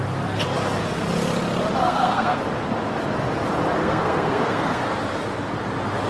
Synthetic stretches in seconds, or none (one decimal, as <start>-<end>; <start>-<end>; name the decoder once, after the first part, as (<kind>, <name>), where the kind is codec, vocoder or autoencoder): 1.8-2.4 (codec, SNAC); 3.8-4.8